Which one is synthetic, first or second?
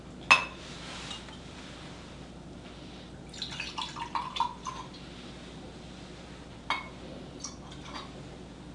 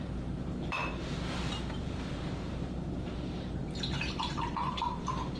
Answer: second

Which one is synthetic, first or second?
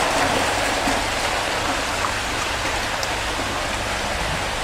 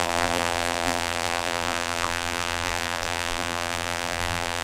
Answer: second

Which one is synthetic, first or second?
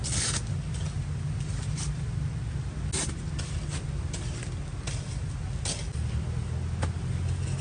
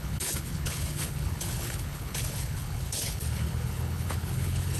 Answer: second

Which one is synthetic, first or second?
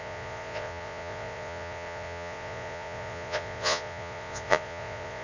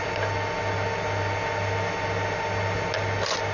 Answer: first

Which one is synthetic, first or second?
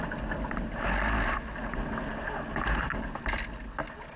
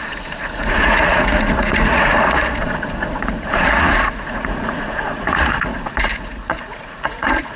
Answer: second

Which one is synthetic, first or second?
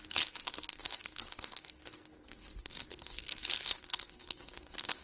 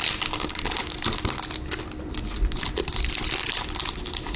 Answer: first